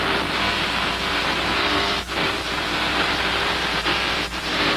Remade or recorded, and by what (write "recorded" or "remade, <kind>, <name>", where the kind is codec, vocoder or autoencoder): remade, vocoder, BigVGAN v2